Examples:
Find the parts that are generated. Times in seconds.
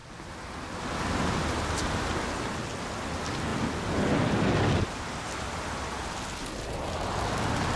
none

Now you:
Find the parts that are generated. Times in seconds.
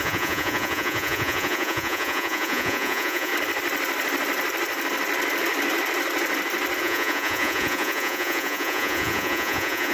0.0-3.3 (vocoder, Vocos); 6.8-9.9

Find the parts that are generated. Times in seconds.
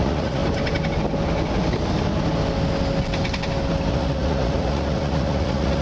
0.0-0.4 (vocoder, Vocos); 3.9-5.8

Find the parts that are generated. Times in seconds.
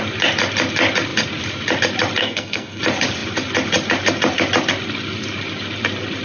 2.2-2.8 (codec, SNAC)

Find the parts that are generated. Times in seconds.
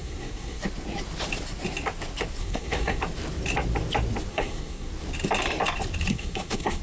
0.0-0.6 (codec, SNAC); 2.4-3.0; 4.3-4.9; 6.1-6.8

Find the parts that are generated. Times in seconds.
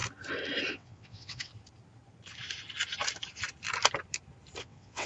0.7-1.5 (vocoder, WaveNeXt); 4.6-5.1